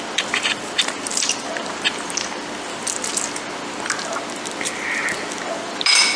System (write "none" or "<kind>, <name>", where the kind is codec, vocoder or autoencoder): none